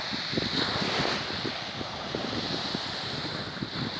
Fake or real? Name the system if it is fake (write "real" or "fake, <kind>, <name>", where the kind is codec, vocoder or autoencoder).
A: real